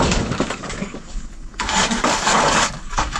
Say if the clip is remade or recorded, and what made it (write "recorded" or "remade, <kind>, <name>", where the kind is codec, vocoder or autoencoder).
remade, codec, DAC